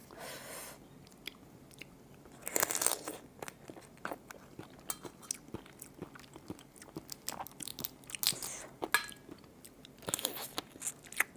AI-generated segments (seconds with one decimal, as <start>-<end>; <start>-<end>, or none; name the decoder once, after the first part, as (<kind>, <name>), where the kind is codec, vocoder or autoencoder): none